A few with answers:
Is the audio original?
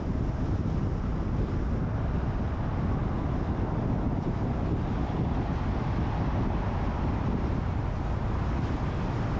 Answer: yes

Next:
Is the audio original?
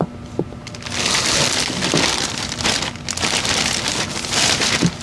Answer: yes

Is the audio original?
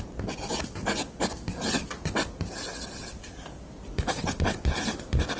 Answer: yes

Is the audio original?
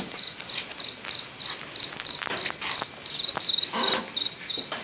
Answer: yes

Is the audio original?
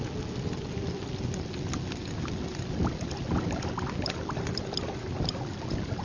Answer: yes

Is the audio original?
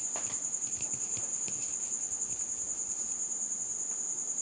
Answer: yes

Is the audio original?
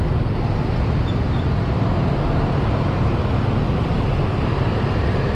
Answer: yes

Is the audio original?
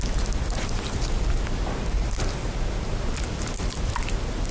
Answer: yes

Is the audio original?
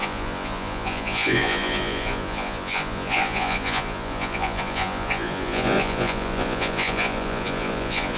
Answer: no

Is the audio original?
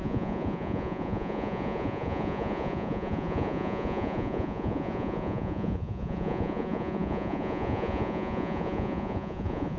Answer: no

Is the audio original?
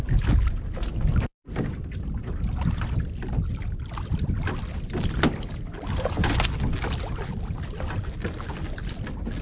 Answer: yes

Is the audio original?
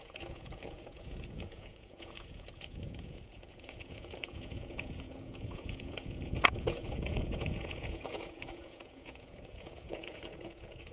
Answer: no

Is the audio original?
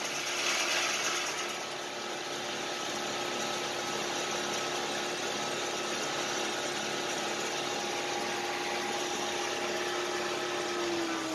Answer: yes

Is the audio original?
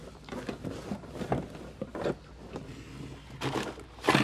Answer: yes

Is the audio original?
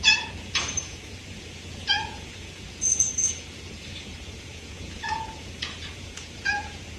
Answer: no